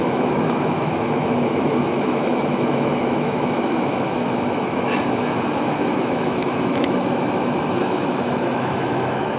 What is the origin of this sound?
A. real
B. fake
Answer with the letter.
B